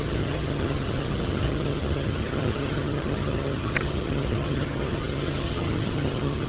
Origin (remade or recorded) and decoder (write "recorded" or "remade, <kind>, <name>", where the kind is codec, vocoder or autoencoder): remade, vocoder, HiFi-GAN